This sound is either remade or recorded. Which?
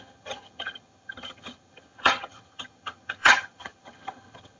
remade